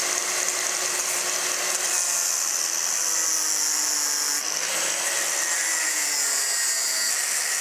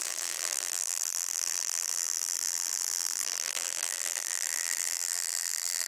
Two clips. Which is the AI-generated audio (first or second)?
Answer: second